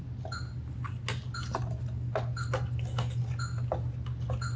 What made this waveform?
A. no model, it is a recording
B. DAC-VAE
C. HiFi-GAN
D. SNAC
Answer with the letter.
A